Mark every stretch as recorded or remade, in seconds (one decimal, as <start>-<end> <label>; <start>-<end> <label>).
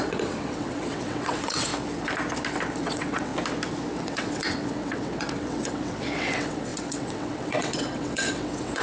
0.0-1.7 remade; 1.7-2.8 recorded; 2.8-3.3 remade; 3.3-3.9 recorded; 3.9-8.8 remade